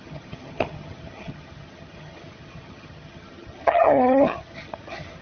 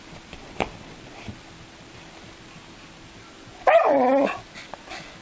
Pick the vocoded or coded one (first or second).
first